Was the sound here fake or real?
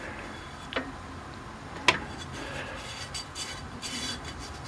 real